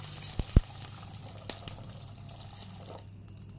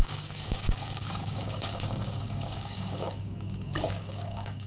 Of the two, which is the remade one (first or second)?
second